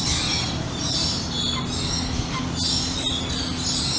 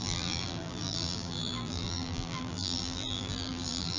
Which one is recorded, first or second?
first